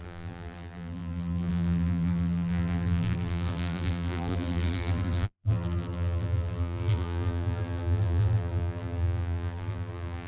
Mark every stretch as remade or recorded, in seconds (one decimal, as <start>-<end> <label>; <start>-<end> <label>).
0.0-10.3 remade